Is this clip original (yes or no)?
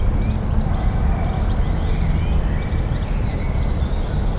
yes